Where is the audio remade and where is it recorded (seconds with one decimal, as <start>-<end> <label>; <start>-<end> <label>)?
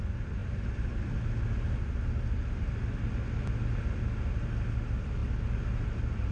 0.0-6.3 recorded